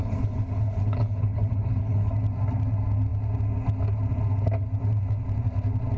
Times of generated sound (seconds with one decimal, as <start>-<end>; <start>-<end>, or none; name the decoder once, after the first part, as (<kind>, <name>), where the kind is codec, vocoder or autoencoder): 0.0-2.1 (codec, HILCodec)

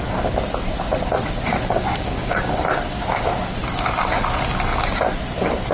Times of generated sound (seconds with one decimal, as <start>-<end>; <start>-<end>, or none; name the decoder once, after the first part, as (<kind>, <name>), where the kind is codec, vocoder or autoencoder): 1.5-2.5 (codec, DAC)

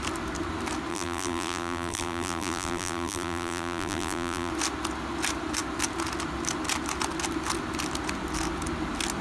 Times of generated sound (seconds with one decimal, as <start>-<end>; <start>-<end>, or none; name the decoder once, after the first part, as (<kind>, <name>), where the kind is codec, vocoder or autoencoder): 0.9-4.5 (vocoder, BigVGAN v2)

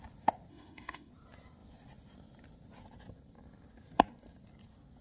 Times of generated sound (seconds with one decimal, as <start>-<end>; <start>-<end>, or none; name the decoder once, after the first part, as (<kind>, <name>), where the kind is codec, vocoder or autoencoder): 0.5-1.1 (autoencoder, DAC-VAE)

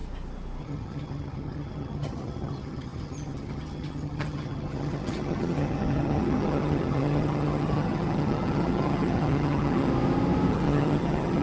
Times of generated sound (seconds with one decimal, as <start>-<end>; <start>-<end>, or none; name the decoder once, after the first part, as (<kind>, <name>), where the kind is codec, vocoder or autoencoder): 0.6-9.9 (vocoder, HiFi-GAN); 10.5-11.4